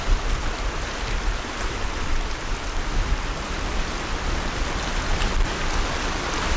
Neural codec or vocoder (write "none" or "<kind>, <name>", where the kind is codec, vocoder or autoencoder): none